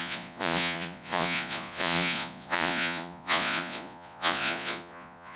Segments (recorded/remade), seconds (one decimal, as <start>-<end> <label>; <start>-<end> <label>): 0.0-5.4 remade

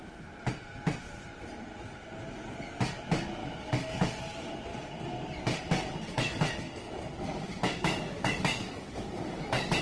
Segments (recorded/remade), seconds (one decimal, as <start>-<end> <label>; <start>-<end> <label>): 0.0-3.4 recorded; 3.4-4.2 remade; 4.2-4.7 recorded; 4.7-9.8 remade

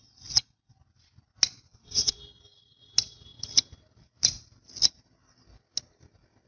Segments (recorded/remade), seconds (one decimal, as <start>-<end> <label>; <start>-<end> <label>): 0.0-1.7 recorded; 1.7-2.2 remade; 2.2-6.5 recorded

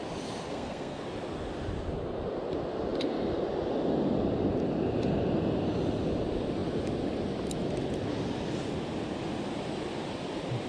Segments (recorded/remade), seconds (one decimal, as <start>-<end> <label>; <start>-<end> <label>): 0.0-0.5 recorded; 0.5-1.0 remade; 1.0-10.7 recorded

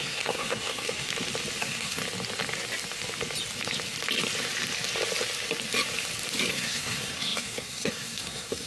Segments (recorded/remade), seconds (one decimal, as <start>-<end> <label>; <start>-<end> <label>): 0.0-1.1 remade; 1.1-1.6 recorded; 1.6-2.0 remade; 2.0-6.5 recorded; 6.5-8.7 remade

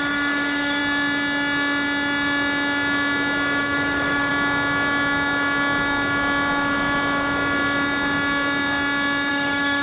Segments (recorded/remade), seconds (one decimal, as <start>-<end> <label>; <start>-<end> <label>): 0.0-0.8 remade; 0.8-3.6 recorded; 3.6-4.3 remade; 4.3-9.3 recorded; 9.3-9.8 remade